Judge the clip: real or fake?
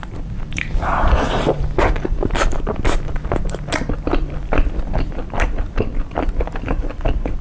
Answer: fake